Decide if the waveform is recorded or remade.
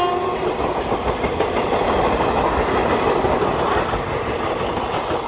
recorded